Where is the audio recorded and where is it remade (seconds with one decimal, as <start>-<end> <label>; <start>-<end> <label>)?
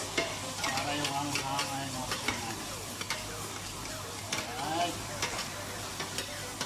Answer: 0.0-2.0 recorded; 2.0-5.9 remade; 5.9-6.7 recorded